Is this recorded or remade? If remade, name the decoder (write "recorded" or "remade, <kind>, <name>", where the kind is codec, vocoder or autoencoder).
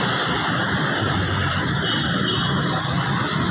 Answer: recorded